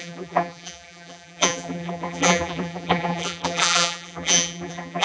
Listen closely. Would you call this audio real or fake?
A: fake